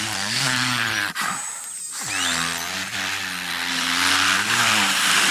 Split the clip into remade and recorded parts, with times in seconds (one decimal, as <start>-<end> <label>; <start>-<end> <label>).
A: 0.0-1.4 remade; 1.4-3.7 recorded; 3.7-5.3 remade